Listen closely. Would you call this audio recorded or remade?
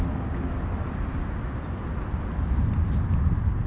recorded